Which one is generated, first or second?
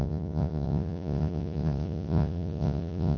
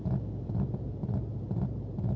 first